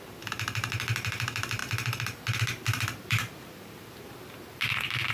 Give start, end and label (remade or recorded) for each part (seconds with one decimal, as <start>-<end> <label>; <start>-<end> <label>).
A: 0.0-5.1 remade